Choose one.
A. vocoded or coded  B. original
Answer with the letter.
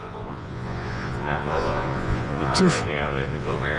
A